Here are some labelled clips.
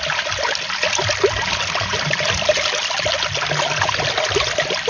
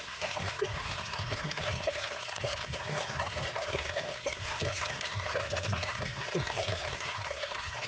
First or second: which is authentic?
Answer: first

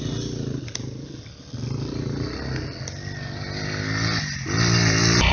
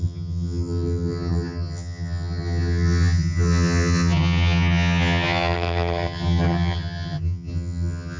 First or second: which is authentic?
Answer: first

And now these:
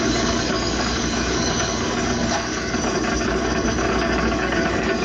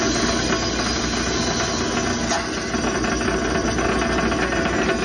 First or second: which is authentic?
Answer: second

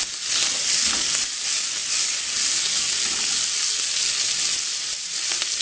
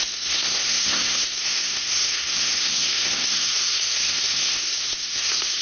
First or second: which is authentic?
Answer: first